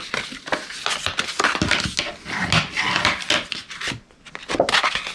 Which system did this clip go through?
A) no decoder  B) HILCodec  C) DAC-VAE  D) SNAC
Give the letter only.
A